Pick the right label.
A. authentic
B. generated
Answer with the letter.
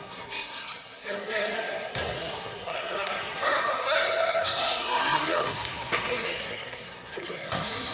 B